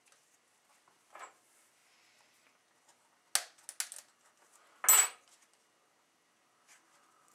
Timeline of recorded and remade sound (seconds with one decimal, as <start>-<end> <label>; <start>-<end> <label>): 0.0-7.3 recorded